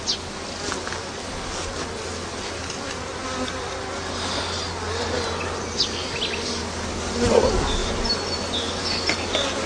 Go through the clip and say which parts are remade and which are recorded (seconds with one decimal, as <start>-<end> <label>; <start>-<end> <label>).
0.0-9.7 recorded